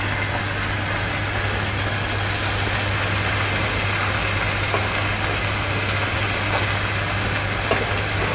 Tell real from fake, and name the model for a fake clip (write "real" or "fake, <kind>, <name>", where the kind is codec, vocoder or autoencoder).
real